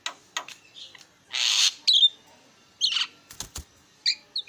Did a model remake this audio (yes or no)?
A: no